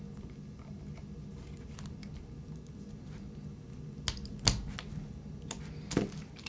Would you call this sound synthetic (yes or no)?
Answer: no